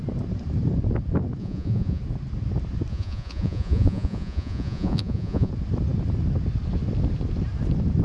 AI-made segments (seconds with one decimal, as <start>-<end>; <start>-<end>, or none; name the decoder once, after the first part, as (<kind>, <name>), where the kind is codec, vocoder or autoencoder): 1.4-2.0 (vocoder, Vocos); 2.9-5.5